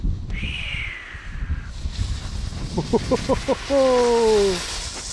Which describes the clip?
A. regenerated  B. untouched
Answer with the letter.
B